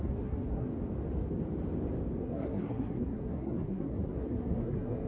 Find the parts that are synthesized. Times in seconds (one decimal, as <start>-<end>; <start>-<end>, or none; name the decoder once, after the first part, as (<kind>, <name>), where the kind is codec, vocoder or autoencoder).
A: 0.0-0.7 (codec, SNAC); 2.2-5.1